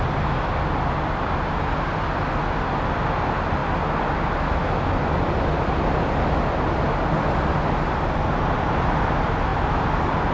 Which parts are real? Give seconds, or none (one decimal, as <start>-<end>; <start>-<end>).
0.0-10.3